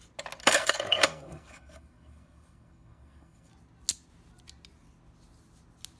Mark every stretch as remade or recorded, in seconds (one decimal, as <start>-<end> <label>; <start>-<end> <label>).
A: 0.0-0.4 recorded; 0.4-3.5 remade; 3.5-6.0 recorded